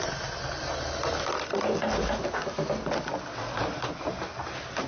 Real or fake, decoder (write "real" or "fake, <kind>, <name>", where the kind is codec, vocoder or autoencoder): real